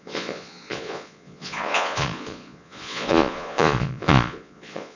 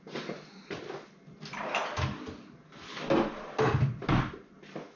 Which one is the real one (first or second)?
second